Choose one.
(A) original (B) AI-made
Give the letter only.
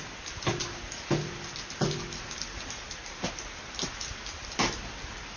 A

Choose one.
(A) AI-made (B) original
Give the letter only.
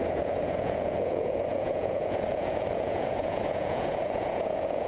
A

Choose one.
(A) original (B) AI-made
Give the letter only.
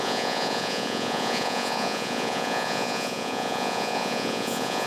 B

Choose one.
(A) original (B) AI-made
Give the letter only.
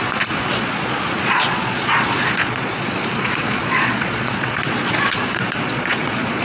B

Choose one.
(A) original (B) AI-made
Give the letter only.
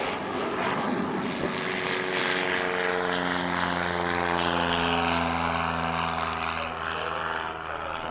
A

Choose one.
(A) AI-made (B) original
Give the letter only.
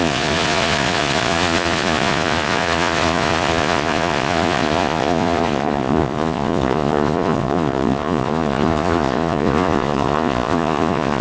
A